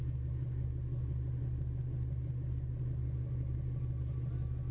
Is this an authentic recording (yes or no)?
yes